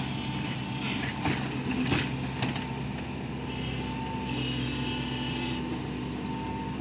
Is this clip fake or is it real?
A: real